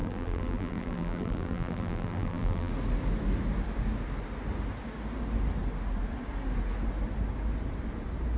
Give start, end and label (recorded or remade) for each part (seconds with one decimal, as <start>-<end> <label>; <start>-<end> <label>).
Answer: 0.0-2.7 remade; 2.7-8.4 recorded